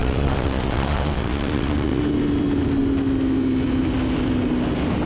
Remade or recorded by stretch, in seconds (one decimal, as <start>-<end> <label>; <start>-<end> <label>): 0.0-2.0 remade; 2.0-5.1 recorded

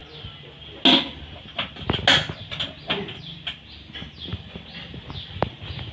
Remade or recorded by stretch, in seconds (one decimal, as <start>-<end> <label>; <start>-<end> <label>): 0.0-4.3 recorded; 4.3-4.9 remade; 4.9-5.9 recorded

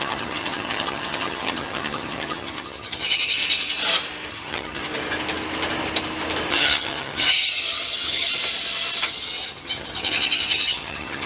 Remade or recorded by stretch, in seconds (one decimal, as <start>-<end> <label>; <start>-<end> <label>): 0.0-3.4 remade; 3.4-4.3 recorded; 4.3-4.8 remade; 4.8-6.5 recorded; 6.5-8.3 remade; 8.3-9.0 recorded; 9.0-11.3 remade

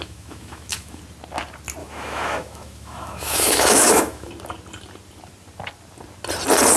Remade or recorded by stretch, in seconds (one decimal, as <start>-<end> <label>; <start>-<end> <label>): 0.0-1.0 remade; 1.0-1.8 recorded; 1.8-4.3 remade; 4.3-6.8 recorded